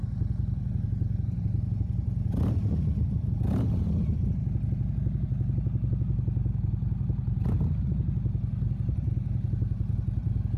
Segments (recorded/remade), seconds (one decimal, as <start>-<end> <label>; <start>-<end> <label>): 0.0-10.6 recorded